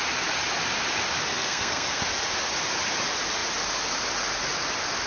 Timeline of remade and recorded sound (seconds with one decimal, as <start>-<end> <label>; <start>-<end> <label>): 0.0-1.3 recorded; 1.3-2.0 remade; 2.0-5.1 recorded